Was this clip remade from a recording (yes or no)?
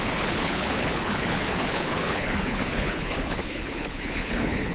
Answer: yes